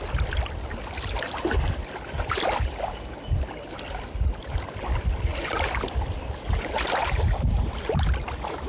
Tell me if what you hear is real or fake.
real